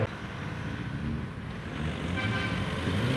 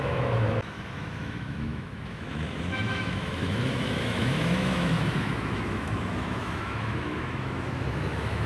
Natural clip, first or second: first